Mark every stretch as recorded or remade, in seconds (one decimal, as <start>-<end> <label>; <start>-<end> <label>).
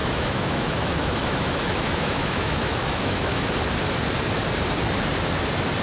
0.0-3.5 remade; 3.5-5.8 recorded